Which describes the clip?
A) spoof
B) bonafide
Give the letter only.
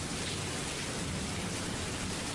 B